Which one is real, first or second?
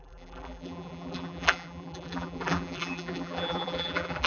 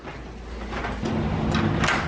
second